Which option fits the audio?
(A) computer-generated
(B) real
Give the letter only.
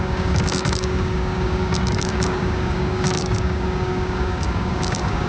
A